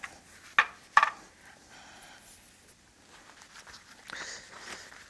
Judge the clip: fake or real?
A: real